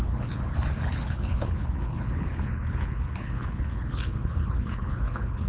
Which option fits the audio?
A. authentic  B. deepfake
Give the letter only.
B